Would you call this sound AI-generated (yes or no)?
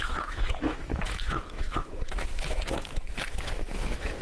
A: yes